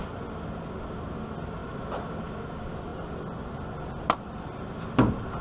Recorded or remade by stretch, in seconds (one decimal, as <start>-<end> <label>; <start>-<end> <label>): 0.0-5.4 recorded